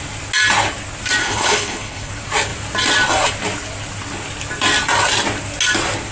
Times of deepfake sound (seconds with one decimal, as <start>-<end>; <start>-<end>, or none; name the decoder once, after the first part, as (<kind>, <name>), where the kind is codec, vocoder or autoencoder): 1.2-2.1 (codec, HILCodec)